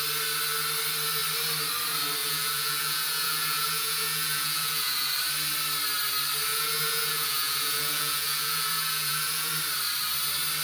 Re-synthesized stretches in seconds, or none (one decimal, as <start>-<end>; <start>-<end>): 2.2-5.1; 6.5-9.5